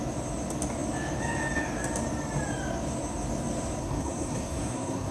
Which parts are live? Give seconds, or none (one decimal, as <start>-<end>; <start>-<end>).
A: 0.0-3.8